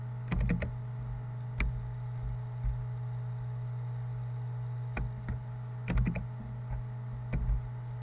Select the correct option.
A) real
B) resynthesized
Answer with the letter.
A